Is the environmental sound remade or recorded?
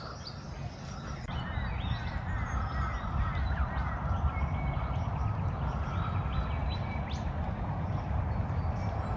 recorded